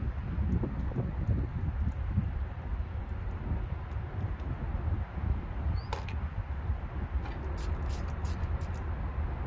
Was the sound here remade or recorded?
recorded